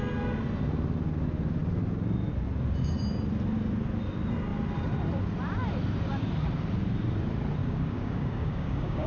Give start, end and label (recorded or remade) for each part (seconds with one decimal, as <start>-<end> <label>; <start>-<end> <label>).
0.0-7.6 recorded; 7.6-9.1 remade